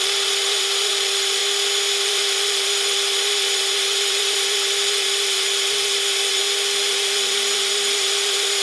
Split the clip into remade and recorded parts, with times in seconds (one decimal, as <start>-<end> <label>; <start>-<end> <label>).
0.0-1.4 remade; 1.4-2.0 recorded; 2.0-6.4 remade; 6.4-6.9 recorded; 6.9-8.6 remade